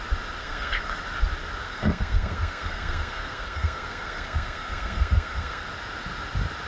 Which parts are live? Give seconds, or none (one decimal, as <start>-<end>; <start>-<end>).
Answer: 0.0-0.4; 1.0-1.6; 5.6-6.7